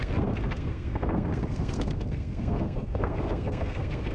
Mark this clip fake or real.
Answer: fake